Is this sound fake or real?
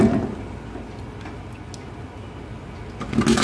real